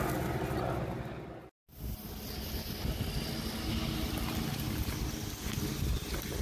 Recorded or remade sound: recorded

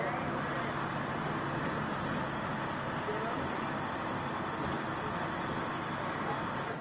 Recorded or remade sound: remade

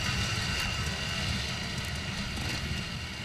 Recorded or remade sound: recorded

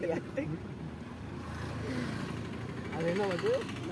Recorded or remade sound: recorded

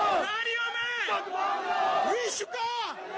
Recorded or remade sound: recorded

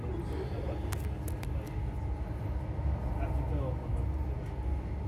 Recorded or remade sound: recorded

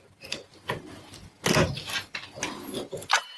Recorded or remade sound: recorded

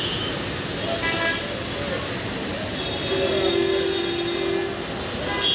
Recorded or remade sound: recorded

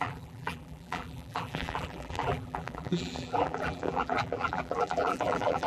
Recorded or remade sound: remade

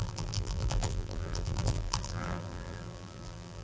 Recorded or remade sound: remade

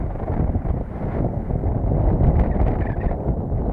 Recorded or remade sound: recorded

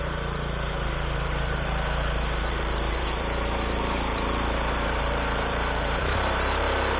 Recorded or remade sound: remade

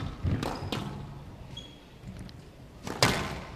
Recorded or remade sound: recorded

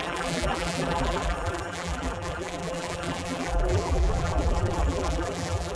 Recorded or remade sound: remade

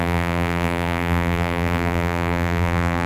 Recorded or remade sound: remade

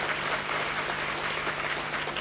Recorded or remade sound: recorded